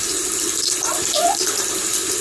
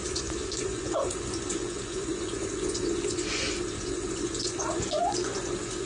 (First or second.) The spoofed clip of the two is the second